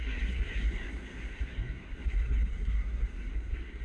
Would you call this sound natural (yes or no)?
no